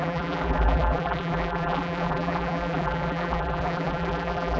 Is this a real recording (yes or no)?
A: no